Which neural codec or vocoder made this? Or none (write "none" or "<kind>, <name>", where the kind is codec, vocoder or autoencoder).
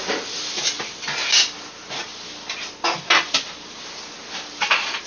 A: none